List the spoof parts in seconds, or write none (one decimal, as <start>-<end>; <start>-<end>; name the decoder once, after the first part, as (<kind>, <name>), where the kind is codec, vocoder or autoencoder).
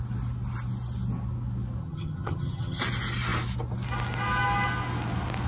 1.8-2.8 (vocoder, HiFi-GAN)